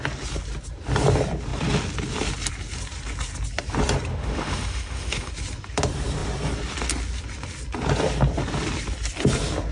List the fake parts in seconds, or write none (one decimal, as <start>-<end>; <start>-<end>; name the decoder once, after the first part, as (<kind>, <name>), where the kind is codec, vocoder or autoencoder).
4.1-5.3 (autoencoder, DAC-VAE)

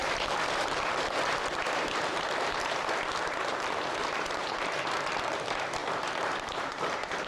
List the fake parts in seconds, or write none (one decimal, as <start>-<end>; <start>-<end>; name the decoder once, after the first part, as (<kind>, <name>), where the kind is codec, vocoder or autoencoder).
0.0-3.1 (vocoder, BigVGAN v2); 4.0-5.1; 5.8-7.3

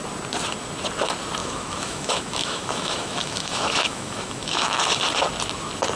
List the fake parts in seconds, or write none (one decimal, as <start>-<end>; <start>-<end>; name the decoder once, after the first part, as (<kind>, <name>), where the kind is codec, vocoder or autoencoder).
1.4-5.0 (autoencoder, DAC-VAE)